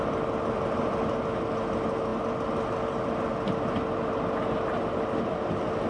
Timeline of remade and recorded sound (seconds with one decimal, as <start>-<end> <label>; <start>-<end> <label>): 0.0-5.9 recorded